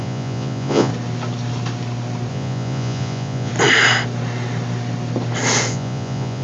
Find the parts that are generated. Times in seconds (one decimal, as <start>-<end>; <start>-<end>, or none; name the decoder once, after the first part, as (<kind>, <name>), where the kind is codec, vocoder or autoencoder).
0.0-0.9 (vocoder, Vocos); 2.3-3.5; 5.7-6.4